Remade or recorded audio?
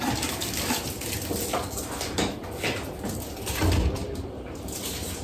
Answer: recorded